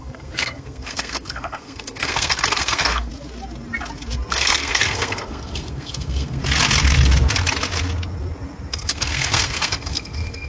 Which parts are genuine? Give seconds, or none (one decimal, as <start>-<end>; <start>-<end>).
3.1-4.3; 6.4-8.7

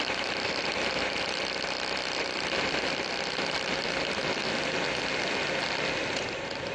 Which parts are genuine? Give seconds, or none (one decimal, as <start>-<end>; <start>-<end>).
4.4-6.7

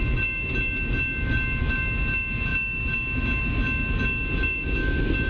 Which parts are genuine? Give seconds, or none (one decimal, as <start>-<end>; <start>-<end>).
0.0-5.3

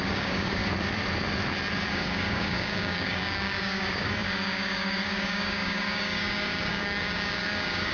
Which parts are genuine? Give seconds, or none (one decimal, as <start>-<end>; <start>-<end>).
0.6-1.9

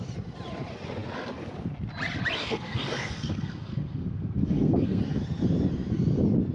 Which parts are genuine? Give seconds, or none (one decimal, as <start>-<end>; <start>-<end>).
0.0-2.4; 5.0-6.5

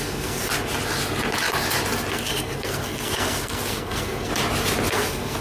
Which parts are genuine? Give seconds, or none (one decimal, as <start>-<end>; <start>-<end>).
0.5-2.1; 4.3-4.9